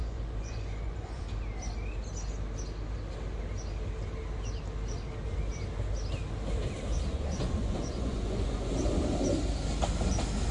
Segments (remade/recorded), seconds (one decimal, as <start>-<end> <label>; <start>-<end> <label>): 0.0-1.2 remade; 1.2-7.1 recorded; 7.1-8.8 remade; 8.8-10.5 recorded